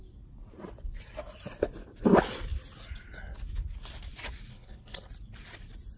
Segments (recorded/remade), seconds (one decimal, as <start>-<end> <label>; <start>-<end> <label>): 0.0-4.5 recorded; 4.5-5.1 remade; 5.1-6.0 recorded